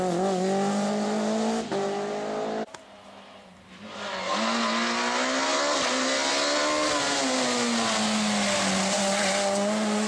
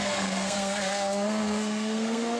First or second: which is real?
first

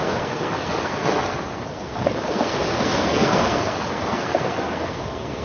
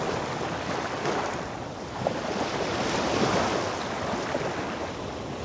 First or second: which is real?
second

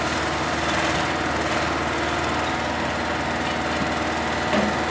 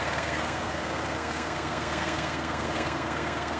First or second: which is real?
first